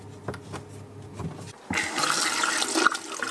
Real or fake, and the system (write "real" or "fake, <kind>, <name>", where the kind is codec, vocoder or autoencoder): real